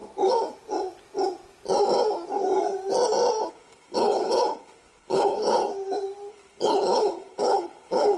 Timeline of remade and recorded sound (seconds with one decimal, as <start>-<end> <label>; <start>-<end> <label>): 0.0-3.5 recorded; 3.5-5.6 remade; 5.6-6.3 recorded; 6.3-8.2 remade